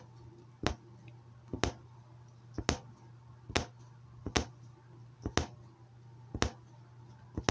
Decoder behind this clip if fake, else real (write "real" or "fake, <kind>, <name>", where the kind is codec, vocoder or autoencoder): real